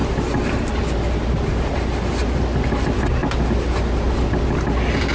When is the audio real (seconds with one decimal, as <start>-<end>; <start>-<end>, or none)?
0.0-5.1

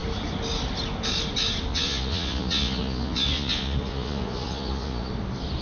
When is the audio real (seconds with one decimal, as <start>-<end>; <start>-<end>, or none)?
0.0-1.7; 5.1-5.6

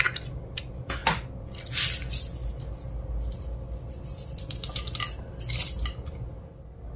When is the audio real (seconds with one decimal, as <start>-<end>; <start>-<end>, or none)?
0.0-7.0

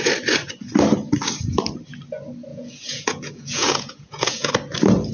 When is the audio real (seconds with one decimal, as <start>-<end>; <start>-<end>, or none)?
0.0-2.5; 4.5-5.1